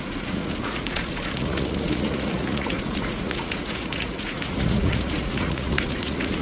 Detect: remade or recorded remade